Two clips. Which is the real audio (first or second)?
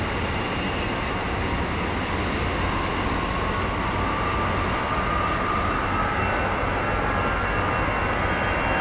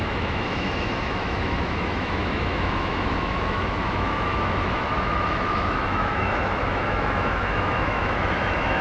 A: first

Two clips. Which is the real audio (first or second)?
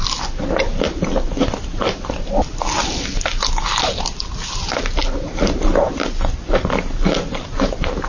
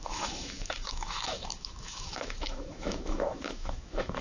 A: first